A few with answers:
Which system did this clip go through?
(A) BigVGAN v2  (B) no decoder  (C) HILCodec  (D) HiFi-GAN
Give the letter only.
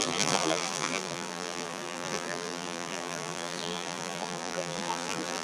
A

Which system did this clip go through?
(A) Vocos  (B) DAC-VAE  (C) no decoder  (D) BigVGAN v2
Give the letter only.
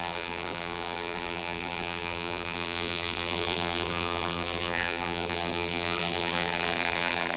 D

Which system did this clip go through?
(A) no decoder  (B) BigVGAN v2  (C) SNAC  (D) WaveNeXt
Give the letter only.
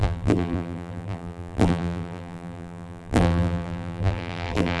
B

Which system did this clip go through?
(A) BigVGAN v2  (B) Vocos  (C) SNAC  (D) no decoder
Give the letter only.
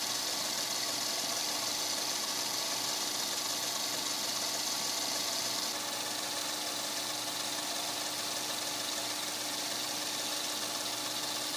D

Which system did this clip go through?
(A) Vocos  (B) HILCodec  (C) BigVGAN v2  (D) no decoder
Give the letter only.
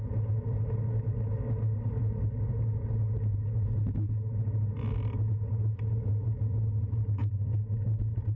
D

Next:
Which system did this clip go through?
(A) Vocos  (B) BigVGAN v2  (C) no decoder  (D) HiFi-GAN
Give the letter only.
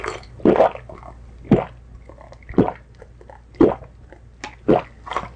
C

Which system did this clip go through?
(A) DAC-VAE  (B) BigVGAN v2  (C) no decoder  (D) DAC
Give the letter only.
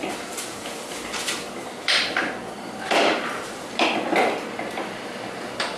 B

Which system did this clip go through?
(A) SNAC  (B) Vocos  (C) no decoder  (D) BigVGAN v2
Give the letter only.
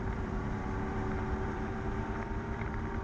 D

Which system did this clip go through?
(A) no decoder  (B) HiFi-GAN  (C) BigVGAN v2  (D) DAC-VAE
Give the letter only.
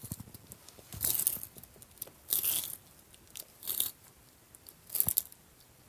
A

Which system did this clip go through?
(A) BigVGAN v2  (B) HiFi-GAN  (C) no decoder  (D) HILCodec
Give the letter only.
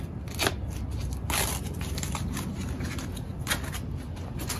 C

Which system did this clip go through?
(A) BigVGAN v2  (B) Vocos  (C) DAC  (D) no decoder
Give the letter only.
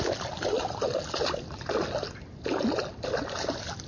D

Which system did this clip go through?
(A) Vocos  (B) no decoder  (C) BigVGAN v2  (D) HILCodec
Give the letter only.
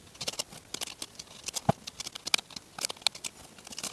B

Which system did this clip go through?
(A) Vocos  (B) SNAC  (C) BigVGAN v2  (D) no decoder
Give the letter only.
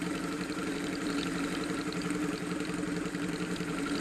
C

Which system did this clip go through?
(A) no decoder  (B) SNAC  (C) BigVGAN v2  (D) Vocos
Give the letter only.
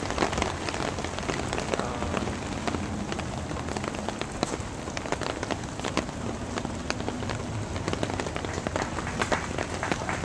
A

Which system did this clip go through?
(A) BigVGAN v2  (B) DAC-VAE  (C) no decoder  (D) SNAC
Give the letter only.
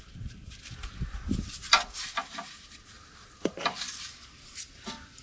A